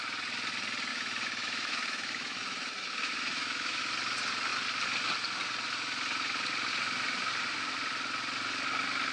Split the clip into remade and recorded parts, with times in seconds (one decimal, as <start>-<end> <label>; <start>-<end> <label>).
0.0-0.9 recorded; 0.9-3.8 remade; 3.8-9.1 recorded